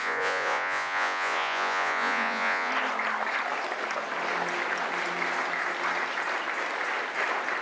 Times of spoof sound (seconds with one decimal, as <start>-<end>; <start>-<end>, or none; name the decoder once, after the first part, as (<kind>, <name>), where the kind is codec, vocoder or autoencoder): 0.0-2.7 (vocoder, Vocos)